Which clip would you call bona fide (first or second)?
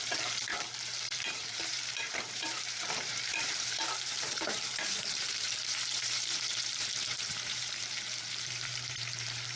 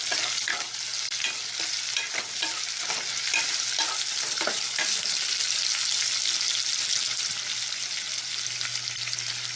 second